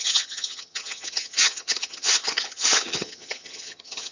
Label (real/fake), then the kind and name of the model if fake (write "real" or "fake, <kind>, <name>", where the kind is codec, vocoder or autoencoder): fake, vocoder, HiFi-GAN